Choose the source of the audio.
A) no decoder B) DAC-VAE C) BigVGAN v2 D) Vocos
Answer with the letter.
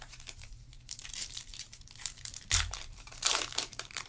C